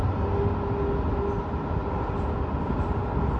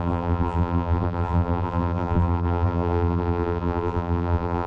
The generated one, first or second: second